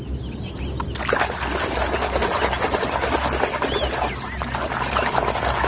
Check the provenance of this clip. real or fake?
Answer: real